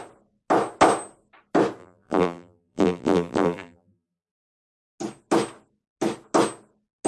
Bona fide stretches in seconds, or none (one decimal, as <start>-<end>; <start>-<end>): 0.0-1.8; 4.4-7.1